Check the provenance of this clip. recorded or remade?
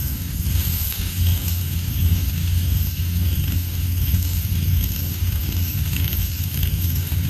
remade